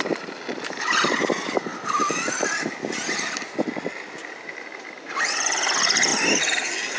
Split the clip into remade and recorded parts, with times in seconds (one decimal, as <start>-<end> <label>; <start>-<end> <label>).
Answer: 0.0-1.7 recorded; 1.7-3.4 remade; 3.4-7.0 recorded